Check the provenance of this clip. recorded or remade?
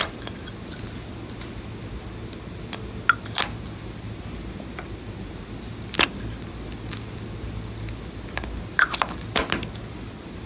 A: recorded